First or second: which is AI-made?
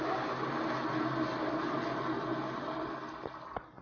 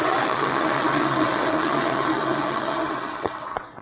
second